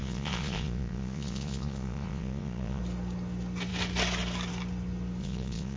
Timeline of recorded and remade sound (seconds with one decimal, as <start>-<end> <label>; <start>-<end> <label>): 0.0-2.8 remade; 2.8-5.2 recorded; 5.2-5.8 remade